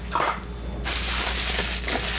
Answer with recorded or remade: recorded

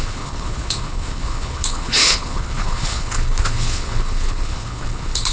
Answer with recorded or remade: remade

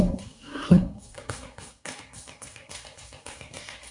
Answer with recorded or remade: remade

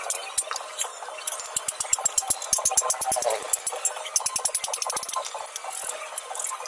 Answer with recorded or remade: recorded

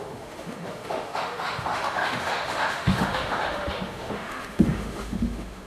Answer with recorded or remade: remade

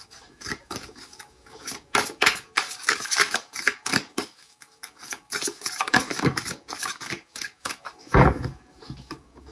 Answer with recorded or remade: remade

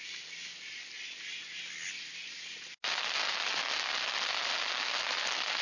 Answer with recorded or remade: recorded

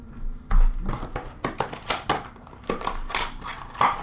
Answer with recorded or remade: recorded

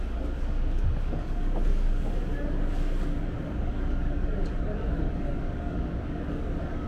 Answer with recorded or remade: remade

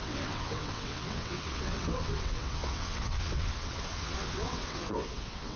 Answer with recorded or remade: remade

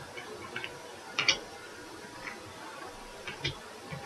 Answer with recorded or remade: recorded